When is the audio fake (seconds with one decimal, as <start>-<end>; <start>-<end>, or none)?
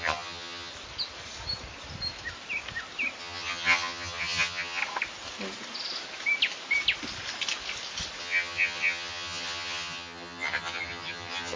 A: 0.0-0.7; 3.2-4.8; 8.2-11.6